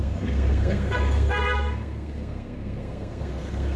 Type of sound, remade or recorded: remade